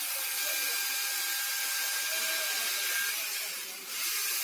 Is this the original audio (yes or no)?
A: yes